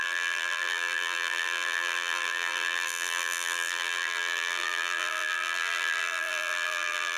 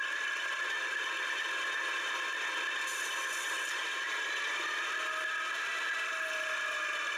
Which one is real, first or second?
second